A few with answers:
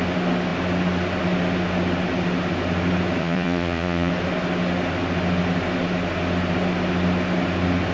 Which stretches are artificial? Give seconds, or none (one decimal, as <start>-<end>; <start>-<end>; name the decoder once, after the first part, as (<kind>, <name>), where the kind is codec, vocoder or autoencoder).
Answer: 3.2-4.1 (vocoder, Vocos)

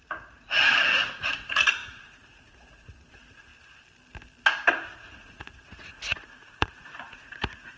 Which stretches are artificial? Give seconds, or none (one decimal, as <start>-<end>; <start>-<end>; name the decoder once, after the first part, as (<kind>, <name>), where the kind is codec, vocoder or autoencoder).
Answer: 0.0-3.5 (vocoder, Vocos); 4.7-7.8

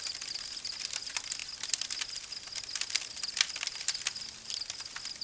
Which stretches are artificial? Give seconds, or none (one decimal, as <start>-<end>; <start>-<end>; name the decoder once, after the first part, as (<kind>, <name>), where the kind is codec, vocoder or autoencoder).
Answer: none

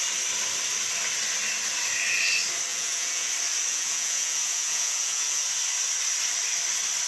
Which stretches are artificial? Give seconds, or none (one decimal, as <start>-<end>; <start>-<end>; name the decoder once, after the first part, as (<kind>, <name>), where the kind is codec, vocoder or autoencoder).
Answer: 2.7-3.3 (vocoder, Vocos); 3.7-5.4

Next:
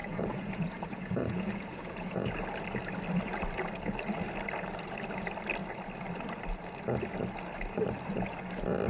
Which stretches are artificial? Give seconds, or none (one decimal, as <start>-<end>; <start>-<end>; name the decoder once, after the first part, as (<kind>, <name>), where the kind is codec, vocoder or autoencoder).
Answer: 0.0-2.3 (vocoder, Vocos)

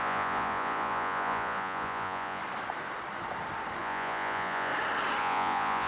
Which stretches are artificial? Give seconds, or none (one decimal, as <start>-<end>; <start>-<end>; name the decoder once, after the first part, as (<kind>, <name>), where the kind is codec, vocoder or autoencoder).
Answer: 0.0-2.4 (vocoder, Vocos); 3.8-4.7; 5.2-5.9